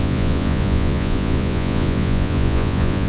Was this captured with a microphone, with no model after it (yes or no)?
no